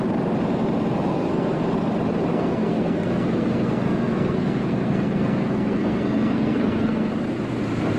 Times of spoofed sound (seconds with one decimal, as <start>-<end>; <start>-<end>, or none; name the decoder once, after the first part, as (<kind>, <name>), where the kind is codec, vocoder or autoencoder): 1.1-1.6 (codec, SNAC); 2.3-7.1